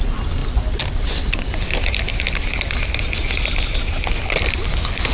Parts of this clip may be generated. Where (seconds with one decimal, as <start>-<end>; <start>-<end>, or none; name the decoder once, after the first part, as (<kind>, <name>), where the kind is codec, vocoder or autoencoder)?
none